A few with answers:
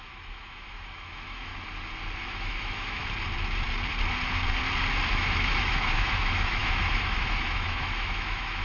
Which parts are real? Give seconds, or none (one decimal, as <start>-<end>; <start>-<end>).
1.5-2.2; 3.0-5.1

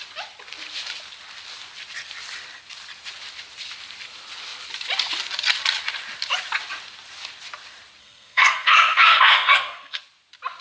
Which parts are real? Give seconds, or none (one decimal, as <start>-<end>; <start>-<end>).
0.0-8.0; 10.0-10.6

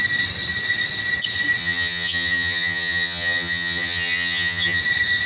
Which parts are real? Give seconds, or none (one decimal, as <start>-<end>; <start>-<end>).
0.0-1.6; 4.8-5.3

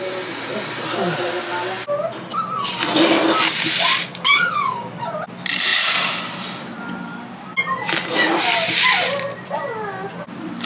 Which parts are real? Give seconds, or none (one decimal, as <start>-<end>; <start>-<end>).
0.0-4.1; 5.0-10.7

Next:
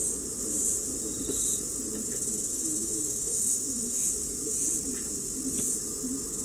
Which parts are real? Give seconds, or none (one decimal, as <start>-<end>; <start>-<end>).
0.0-2.5; 4.1-6.4

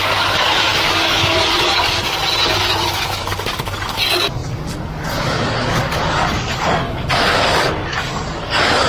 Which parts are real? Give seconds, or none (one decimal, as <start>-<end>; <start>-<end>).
2.0-2.7